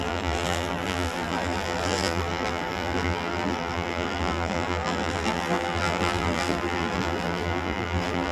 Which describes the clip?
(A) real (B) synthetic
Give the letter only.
B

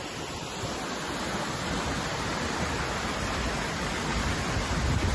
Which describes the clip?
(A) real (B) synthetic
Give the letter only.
A